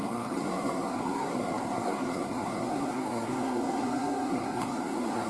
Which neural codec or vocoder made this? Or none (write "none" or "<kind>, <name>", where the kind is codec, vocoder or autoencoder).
codec, SNAC